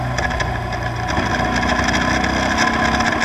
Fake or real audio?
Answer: real